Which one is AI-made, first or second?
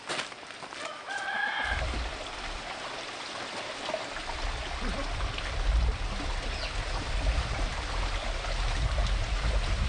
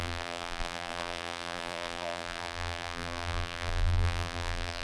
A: second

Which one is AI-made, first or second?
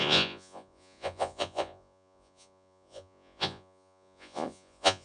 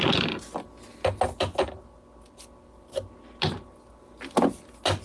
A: first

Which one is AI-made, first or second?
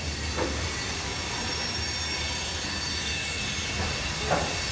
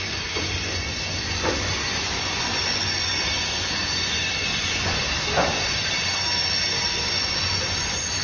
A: second